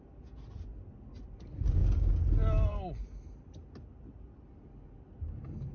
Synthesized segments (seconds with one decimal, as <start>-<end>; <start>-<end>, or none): none